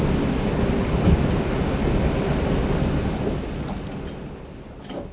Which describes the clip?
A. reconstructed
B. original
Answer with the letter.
B